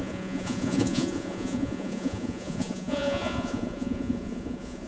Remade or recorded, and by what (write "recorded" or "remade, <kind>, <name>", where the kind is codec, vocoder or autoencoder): remade, vocoder, Vocos